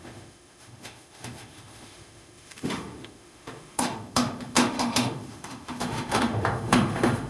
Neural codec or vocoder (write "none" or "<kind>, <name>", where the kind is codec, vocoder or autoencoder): autoencoder, DAC-VAE